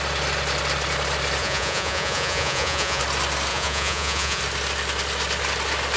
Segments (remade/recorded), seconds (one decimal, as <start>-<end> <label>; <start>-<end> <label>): 0.0-1.4 recorded; 1.4-3.0 remade; 3.0-3.5 recorded; 3.5-4.4 remade; 4.4-6.0 recorded